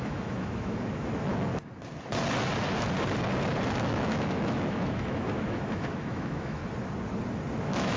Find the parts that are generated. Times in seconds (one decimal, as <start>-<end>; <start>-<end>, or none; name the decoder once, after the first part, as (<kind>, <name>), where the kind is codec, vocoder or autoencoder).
0.0-1.5 (autoencoder, DAC-VAE); 3.7-6.6; 7.6-8.0